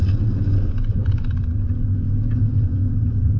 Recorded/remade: remade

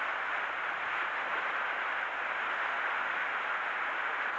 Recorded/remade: recorded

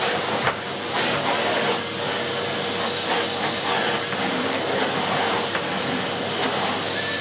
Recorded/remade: recorded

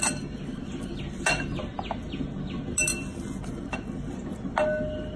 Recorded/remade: recorded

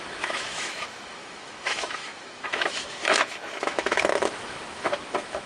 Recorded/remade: remade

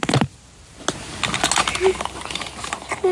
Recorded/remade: recorded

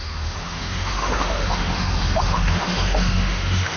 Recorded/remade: remade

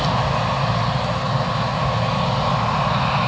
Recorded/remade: recorded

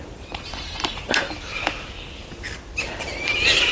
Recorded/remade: recorded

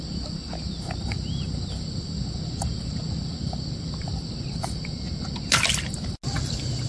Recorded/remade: recorded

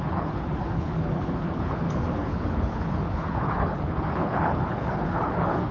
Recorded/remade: remade